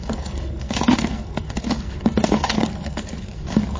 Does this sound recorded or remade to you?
remade